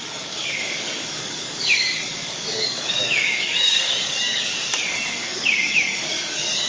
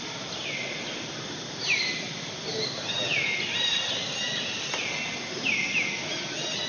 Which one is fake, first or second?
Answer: first